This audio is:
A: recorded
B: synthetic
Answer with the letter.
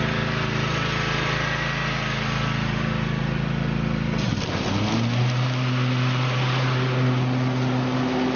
A